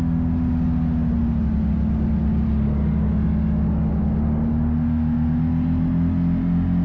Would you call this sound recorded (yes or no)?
yes